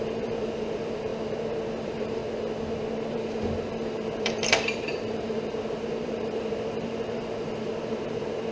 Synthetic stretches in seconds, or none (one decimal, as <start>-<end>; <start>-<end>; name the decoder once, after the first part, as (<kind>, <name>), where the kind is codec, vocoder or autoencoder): 0.0-1.1 (vocoder, BigVGAN v2); 1.8-2.2; 3.1-8.5